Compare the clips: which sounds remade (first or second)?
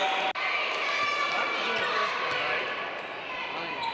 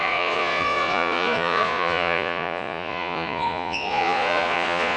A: second